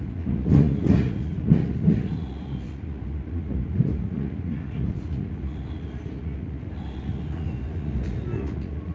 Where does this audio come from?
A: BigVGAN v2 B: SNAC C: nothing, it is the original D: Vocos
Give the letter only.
D